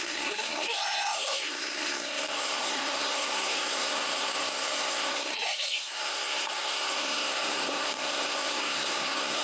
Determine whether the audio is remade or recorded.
remade